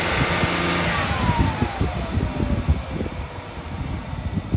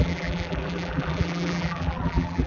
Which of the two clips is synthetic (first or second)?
second